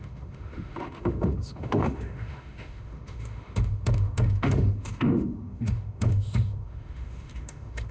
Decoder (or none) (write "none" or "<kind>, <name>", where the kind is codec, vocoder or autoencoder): autoencoder, DAC-VAE